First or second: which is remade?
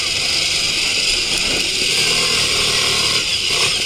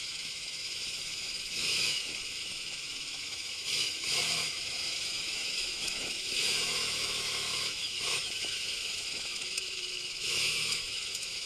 second